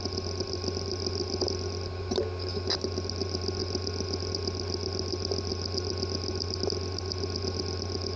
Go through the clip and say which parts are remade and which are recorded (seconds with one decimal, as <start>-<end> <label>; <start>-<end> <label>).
0.0-3.6 remade; 3.6-4.3 recorded; 4.3-5.5 remade; 5.5-8.2 recorded